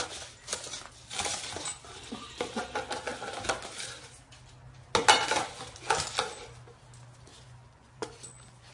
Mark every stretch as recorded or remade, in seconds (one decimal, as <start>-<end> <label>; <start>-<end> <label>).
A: 0.0-7.3 recorded; 7.3-8.7 remade